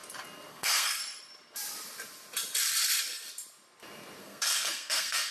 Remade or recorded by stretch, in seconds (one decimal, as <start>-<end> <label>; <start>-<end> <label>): 0.0-0.5 recorded; 0.5-1.0 remade; 1.0-4.2 recorded; 4.2-5.3 remade